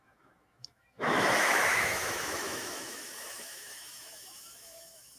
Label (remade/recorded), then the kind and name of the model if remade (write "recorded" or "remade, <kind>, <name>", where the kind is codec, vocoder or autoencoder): remade, autoencoder, DAC-VAE